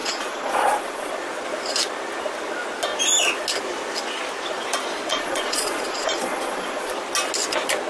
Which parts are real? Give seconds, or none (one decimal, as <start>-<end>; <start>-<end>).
1.1-5.1; 6.9-7.9